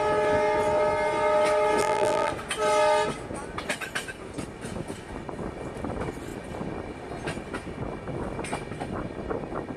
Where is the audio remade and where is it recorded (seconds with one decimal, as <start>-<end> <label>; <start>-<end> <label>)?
0.0-1.8 recorded; 1.8-2.3 remade; 2.3-9.8 recorded